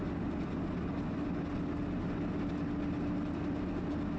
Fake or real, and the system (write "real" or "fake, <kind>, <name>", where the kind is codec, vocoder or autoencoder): real